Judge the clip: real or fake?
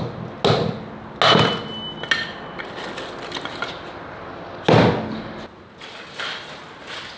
real